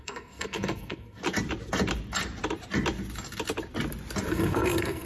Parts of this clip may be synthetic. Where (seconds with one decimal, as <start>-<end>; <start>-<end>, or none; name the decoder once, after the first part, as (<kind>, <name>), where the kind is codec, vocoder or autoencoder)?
0.0-1.2 (codec, SNAC); 4.3-5.1